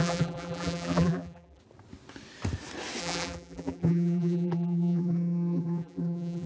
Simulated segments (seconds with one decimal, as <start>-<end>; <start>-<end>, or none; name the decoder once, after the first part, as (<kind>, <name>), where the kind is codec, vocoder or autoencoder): 0.0-1.6 (vocoder, BigVGAN v2); 3.0-6.5